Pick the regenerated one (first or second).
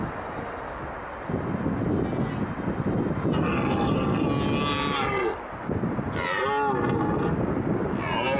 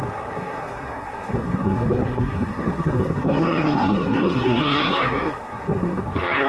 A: second